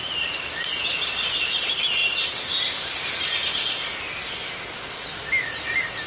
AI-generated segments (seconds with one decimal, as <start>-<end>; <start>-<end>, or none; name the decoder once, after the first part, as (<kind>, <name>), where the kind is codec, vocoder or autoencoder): none